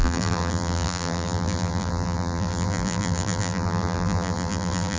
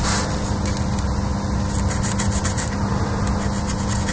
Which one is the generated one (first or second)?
first